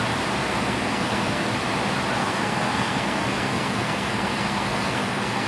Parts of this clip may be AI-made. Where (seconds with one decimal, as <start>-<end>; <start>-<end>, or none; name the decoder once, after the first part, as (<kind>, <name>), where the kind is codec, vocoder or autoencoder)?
0.4-1.5 (codec, SNAC); 2.2-5.5